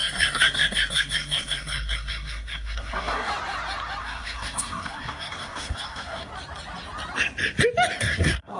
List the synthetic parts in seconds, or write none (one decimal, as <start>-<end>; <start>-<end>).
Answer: 0.0-3.3; 4.0-6.3; 8.0-8.6